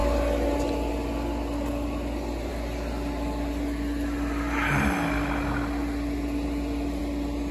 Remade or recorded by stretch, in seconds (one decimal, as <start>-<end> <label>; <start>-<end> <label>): 0.0-7.5 recorded